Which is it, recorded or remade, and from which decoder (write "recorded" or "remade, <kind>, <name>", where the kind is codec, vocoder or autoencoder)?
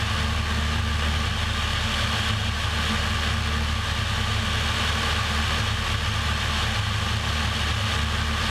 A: recorded